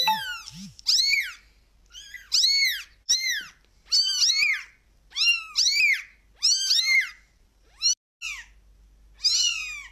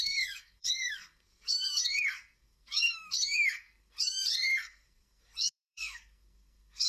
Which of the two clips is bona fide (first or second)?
first